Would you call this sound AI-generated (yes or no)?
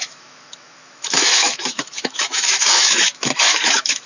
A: yes